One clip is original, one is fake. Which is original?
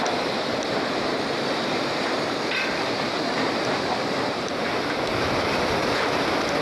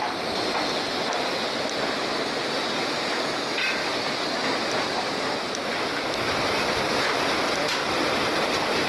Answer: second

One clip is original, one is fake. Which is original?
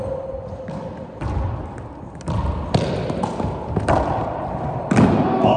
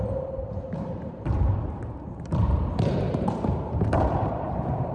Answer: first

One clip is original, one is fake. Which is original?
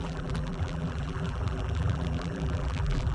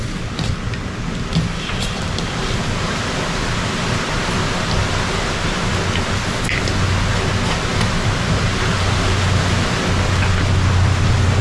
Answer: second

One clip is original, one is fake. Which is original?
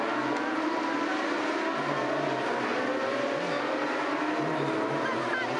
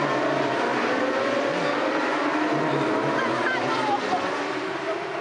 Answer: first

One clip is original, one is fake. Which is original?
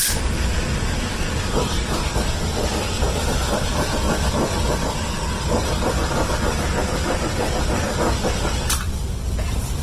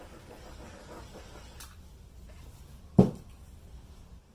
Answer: second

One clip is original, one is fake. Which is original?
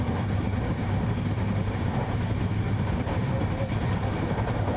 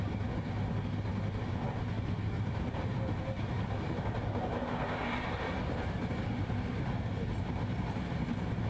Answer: second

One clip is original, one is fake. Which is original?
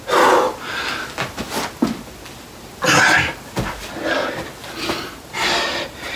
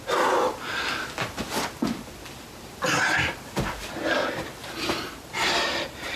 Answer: first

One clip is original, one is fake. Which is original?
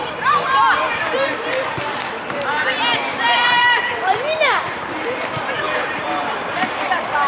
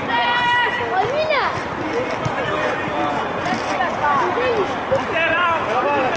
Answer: second